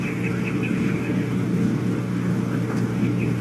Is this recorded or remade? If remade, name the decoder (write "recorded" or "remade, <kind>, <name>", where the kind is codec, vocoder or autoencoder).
remade, codec, DAC